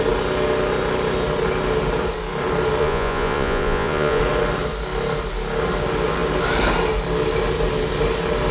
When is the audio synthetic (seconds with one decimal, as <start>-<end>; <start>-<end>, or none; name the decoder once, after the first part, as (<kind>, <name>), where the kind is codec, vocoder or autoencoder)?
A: 2.8-4.2 (vocoder, Vocos)